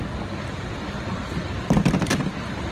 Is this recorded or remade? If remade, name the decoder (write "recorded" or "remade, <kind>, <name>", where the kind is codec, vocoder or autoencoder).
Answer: recorded